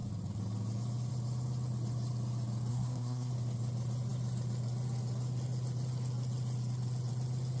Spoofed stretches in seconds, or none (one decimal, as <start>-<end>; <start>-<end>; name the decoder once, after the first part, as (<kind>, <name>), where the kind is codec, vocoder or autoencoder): 2.7-3.3 (codec, SNAC)